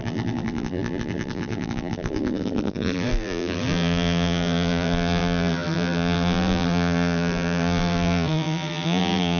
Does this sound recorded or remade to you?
remade